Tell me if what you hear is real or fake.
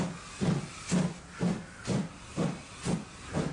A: real